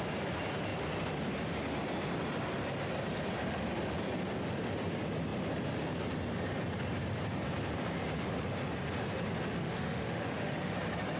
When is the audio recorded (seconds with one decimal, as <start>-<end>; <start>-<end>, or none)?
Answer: 0.0-9.6; 10.7-11.2